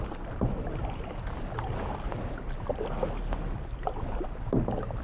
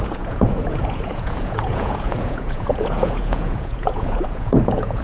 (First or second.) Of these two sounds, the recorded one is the first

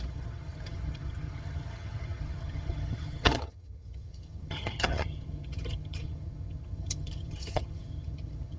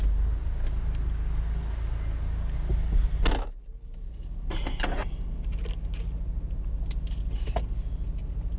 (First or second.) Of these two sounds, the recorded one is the second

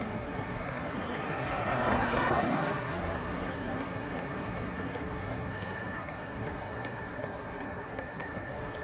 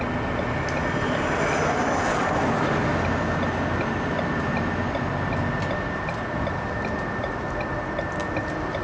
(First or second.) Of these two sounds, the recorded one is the second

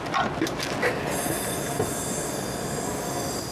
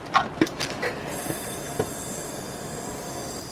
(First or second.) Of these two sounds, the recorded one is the first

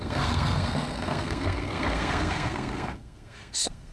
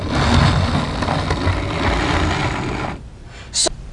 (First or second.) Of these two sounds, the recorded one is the second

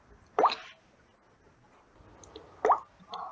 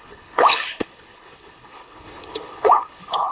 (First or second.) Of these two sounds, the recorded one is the first